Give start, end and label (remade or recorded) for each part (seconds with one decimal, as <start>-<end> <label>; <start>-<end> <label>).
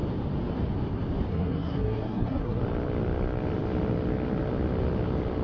0.0-1.3 recorded; 1.3-2.6 remade; 2.6-5.4 recorded